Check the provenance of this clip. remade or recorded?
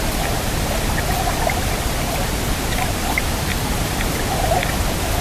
recorded